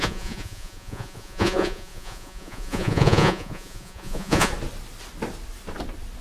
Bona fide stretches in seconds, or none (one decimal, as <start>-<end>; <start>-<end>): 4.5-6.2